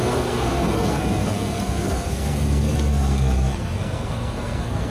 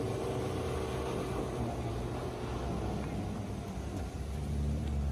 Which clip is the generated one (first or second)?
first